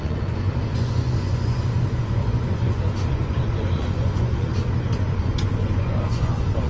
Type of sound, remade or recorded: remade